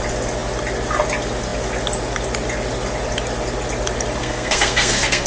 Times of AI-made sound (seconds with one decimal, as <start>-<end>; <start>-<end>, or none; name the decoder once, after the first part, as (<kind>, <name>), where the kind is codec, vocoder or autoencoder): 4.2-5.3 (codec, SNAC)